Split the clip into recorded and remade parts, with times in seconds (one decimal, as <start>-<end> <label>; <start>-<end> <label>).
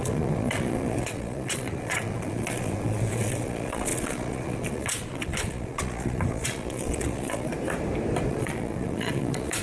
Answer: 0.0-7.5 remade; 7.5-8.3 recorded; 8.3-9.6 remade